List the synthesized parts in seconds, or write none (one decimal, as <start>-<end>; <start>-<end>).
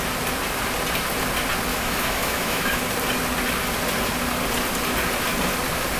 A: 1.7-2.8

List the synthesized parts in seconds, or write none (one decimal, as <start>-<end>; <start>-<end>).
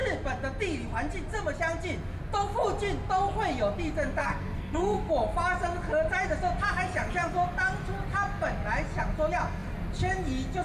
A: 4.2-5.1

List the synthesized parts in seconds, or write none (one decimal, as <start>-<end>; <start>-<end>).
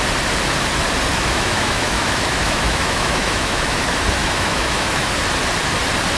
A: 1.1-3.8; 4.2-5.1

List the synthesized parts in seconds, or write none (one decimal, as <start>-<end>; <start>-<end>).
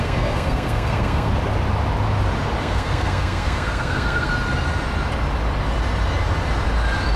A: 0.0-1.3; 2.6-4.3